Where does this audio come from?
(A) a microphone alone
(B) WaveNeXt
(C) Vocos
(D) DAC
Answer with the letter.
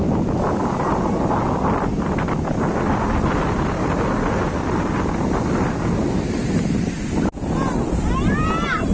A